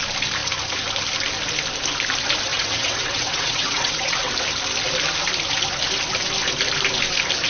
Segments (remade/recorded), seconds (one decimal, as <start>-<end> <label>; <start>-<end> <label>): 0.0-2.5 recorded; 2.5-4.3 remade; 4.3-7.5 recorded